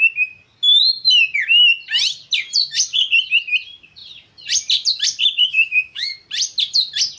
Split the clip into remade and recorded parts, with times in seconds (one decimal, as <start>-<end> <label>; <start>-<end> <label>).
0.0-5.4 recorded; 5.4-6.1 remade; 6.1-7.2 recorded